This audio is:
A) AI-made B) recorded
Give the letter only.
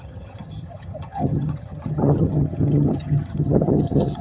A